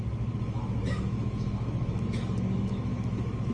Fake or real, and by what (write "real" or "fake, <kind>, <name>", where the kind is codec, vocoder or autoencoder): fake, autoencoder, DAC-VAE